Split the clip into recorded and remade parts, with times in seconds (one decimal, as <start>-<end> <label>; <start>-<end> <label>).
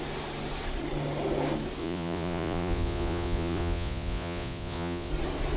0.0-1.8 recorded; 1.8-5.1 remade; 5.1-5.6 recorded